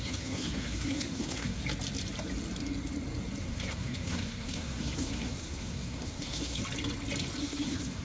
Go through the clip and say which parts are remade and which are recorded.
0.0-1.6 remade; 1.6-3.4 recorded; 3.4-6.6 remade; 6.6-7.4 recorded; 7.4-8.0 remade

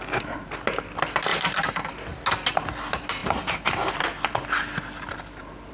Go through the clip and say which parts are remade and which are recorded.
0.0-1.3 recorded; 1.3-1.9 remade; 1.9-5.7 recorded